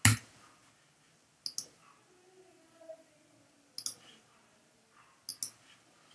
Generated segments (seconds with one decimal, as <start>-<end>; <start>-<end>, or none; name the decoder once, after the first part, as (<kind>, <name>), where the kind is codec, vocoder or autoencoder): 2.5-3.1 (vocoder, BigVGAN v2)